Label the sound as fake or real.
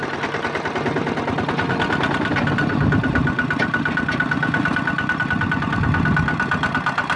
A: real